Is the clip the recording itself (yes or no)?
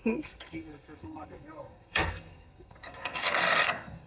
no